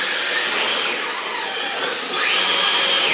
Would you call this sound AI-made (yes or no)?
no